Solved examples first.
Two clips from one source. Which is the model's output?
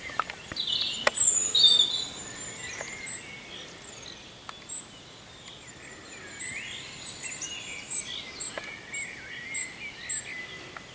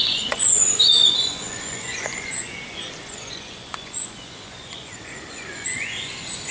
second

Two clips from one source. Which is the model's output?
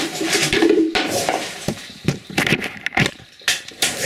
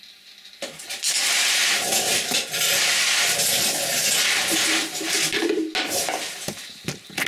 first